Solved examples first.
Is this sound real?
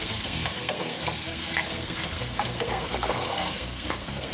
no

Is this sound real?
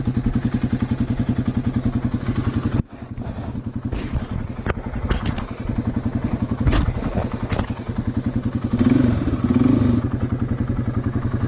yes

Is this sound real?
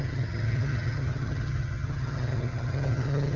no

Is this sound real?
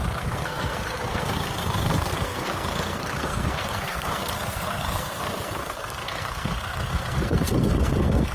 no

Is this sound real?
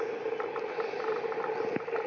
yes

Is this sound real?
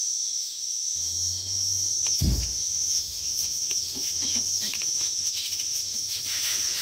no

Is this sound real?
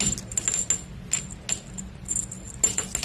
yes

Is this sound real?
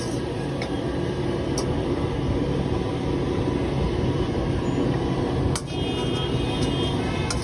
yes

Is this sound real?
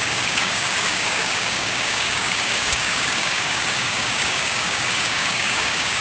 no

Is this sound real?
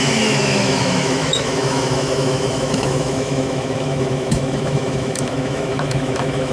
no